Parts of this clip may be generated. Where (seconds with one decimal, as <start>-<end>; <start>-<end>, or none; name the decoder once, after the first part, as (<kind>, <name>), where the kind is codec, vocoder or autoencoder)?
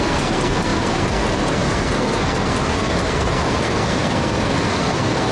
0.0-5.3 (codec, SNAC)